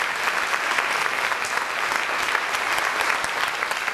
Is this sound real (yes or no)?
yes